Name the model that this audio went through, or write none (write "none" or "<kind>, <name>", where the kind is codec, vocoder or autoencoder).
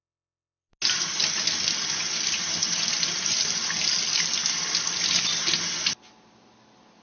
none